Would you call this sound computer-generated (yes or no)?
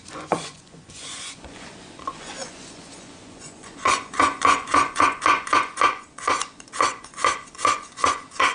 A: yes